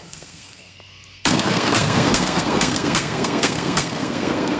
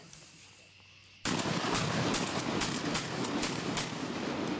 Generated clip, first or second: first